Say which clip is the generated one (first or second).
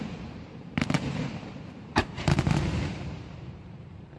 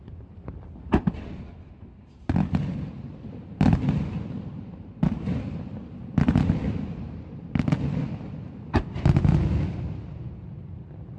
first